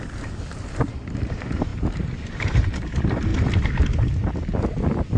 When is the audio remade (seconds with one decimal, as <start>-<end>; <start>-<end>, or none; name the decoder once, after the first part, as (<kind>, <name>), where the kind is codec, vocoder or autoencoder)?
none